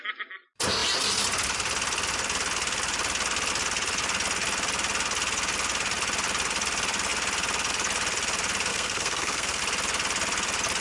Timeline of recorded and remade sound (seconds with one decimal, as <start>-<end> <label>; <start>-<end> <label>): 0.0-8.7 recorded; 8.7-9.6 remade; 9.6-10.8 recorded